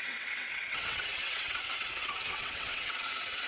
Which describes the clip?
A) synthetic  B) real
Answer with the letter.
A